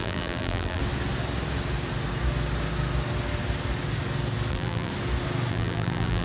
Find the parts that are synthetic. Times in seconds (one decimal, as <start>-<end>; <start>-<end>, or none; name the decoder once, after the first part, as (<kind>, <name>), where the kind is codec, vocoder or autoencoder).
0.0-0.8 (vocoder, BigVGAN v2); 4.5-4.9; 5.5-6.2